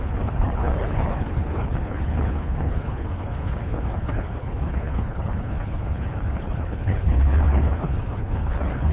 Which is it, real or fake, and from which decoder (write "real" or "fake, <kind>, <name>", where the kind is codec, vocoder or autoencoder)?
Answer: fake, codec, HILCodec